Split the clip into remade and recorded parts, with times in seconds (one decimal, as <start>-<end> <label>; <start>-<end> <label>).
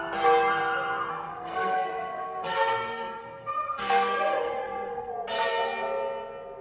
0.0-1.1 recorded; 1.1-5.1 remade; 5.1-6.6 recorded